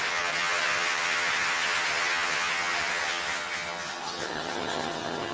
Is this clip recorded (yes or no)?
no